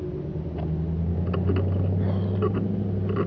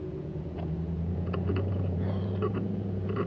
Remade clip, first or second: second